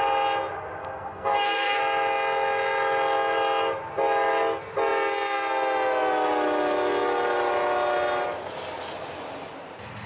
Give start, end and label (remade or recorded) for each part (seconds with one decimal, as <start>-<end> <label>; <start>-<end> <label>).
0.0-0.8 recorded; 0.8-1.8 remade; 1.8-10.1 recorded